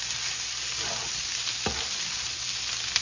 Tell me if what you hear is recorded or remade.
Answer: recorded